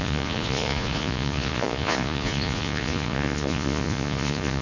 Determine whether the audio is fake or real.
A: fake